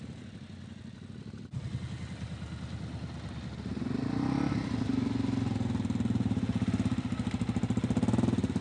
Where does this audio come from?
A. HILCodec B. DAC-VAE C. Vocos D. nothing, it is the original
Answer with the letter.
D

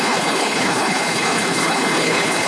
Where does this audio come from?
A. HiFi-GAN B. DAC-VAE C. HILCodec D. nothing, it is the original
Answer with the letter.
C